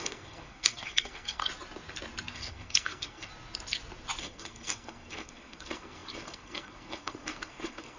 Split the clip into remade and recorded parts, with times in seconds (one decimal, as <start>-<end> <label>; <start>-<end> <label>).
0.0-1.4 remade; 1.4-2.3 recorded; 2.3-3.3 remade; 3.3-4.2 recorded; 4.2-8.0 remade